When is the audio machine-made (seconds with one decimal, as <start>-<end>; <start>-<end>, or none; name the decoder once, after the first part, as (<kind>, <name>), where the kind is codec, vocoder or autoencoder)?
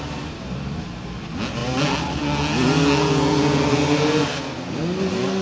none